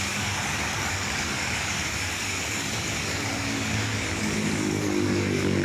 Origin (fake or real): fake